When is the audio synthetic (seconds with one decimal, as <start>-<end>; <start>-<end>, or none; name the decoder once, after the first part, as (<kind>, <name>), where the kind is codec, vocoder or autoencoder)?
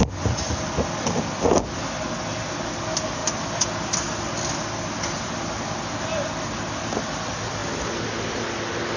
none